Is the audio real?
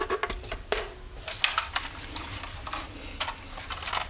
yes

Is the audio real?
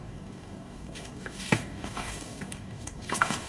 no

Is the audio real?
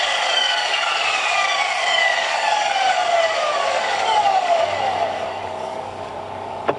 no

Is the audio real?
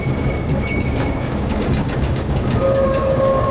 no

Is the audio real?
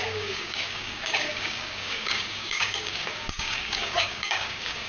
no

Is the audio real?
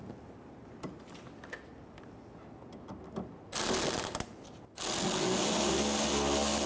yes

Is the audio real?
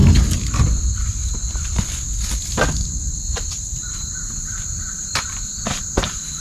yes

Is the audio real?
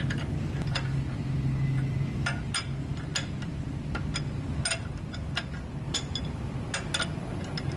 yes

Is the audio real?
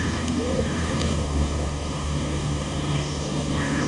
no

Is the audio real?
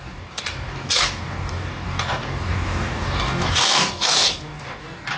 no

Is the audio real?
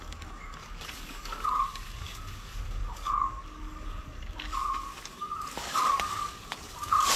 no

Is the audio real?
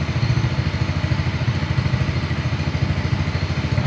yes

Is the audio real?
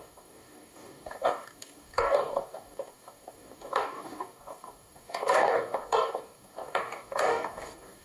no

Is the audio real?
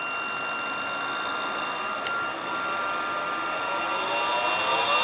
yes